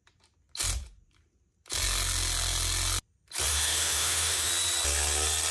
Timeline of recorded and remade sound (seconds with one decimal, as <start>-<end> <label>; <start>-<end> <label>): 0.0-3.5 recorded; 3.5-4.5 remade; 4.5-5.5 recorded